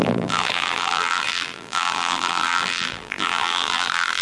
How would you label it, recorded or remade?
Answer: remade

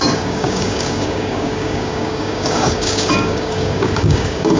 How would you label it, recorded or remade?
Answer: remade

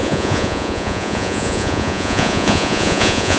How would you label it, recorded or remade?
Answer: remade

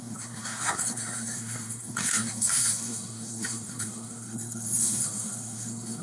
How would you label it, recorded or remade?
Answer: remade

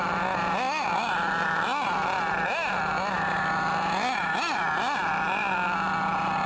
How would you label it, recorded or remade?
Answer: recorded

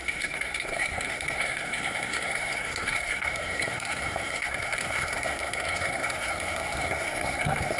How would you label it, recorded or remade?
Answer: remade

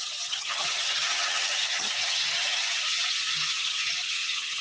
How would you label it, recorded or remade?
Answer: remade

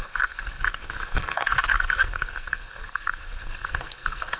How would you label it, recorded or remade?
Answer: remade